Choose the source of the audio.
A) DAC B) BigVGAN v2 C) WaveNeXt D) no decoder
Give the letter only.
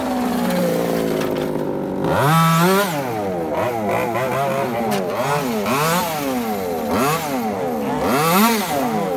D